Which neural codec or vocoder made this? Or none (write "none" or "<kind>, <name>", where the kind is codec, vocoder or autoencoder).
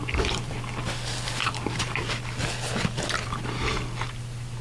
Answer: none